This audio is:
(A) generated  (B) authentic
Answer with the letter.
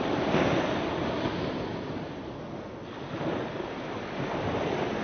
B